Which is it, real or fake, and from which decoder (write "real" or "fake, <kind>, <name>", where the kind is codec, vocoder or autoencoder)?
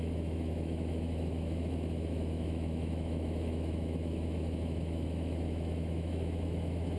fake, autoencoder, DAC-VAE